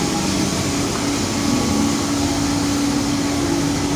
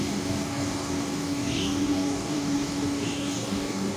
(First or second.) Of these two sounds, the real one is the first